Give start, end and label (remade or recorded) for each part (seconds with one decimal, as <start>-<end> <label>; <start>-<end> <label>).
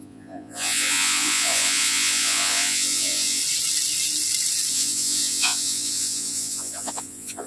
0.0-3.4 remade; 3.4-4.7 recorded; 4.7-7.5 remade